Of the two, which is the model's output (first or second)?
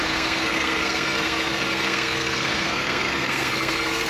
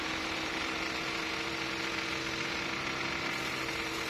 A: first